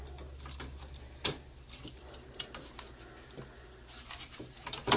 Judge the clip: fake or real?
real